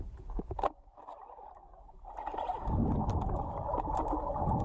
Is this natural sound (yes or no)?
no